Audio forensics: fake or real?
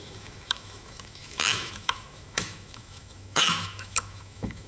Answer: fake